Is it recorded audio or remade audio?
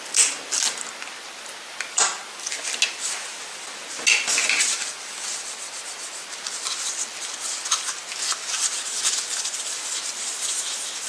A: recorded